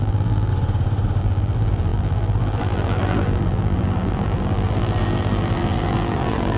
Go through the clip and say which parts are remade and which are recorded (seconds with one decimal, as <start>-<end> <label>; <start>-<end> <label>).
0.0-0.5 remade; 0.5-1.2 recorded; 1.2-6.6 remade